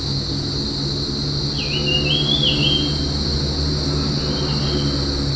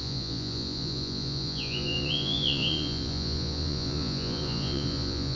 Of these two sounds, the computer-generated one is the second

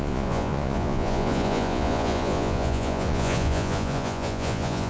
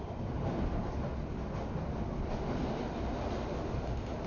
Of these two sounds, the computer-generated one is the first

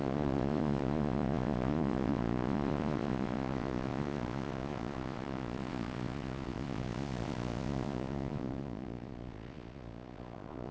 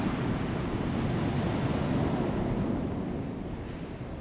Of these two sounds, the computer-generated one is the first